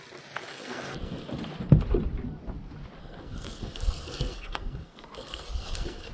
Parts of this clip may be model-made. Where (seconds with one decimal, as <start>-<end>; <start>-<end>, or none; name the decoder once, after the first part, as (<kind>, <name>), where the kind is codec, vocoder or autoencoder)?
0.5-1.3 (codec, SNAC); 3.0-6.1